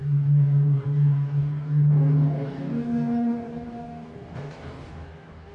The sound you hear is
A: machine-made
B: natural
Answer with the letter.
A